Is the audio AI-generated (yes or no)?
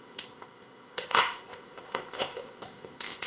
yes